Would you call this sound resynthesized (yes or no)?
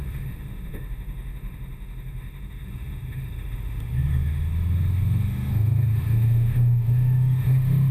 yes